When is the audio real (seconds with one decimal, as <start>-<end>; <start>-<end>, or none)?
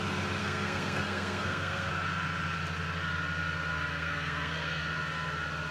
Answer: 0.0-0.4; 1.9-3.9; 4.8-5.7